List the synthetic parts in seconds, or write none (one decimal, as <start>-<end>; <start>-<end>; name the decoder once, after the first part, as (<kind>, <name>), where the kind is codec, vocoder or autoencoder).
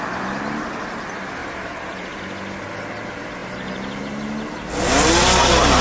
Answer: 1.4-2.2 (vocoder, BigVGAN v2)